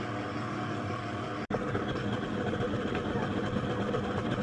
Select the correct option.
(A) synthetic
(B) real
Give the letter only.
B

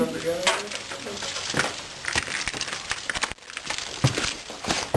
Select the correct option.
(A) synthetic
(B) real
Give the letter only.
B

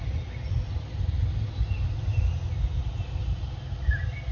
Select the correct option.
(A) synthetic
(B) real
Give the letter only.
B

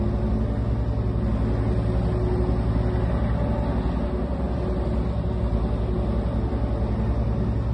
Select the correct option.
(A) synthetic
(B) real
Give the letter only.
B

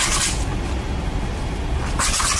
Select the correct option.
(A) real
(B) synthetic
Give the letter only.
A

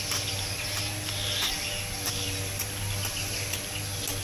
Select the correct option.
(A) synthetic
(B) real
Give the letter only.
B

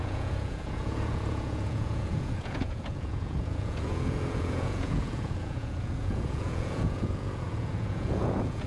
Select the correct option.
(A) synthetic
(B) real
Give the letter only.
A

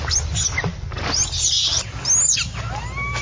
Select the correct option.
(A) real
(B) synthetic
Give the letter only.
A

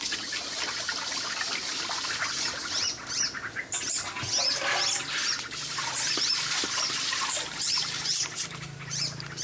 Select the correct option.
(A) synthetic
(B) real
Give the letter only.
B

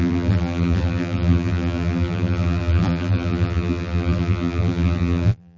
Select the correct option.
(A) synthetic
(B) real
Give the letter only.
A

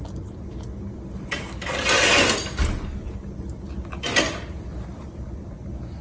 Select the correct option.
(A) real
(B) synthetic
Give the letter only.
A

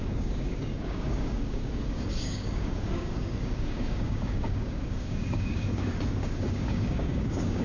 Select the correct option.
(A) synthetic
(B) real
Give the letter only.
A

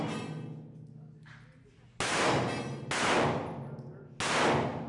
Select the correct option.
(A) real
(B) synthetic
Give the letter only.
A